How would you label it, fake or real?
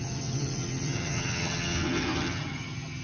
fake